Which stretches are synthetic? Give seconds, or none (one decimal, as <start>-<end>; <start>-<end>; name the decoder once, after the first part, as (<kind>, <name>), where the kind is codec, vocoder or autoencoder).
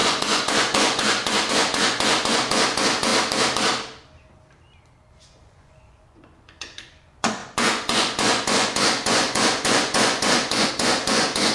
0.0-3.1 (vocoder, Vocos); 5.1-11.5